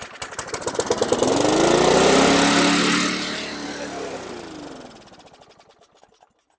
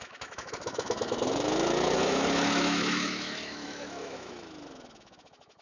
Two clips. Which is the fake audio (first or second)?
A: second